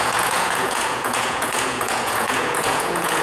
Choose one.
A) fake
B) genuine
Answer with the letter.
A